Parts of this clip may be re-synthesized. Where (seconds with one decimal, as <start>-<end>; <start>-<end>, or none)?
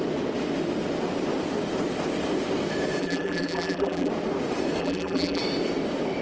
3.0-4.1; 4.8-5.4